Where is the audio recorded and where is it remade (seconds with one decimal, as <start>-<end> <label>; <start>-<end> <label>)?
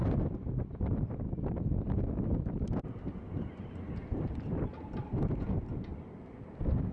0.0-3.7 recorded; 3.7-6.9 remade